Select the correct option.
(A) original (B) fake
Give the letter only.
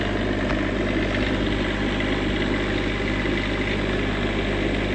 A